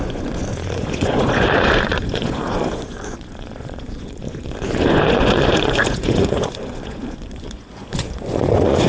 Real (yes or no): no